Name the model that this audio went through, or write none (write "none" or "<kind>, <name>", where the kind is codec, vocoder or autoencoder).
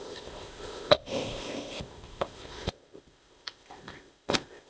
codec, ZipCodec